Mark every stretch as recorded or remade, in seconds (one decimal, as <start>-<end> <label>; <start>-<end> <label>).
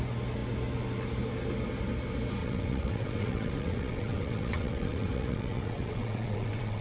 0.0-2.4 recorded; 2.4-6.8 remade